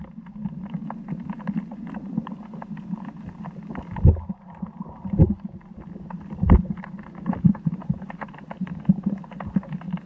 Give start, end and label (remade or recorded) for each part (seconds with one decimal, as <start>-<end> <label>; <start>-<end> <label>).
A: 0.0-10.1 recorded